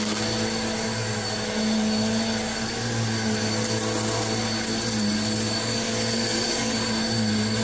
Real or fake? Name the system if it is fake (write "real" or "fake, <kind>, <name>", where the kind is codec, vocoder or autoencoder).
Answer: real